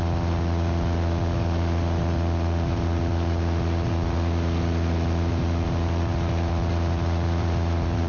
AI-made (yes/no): no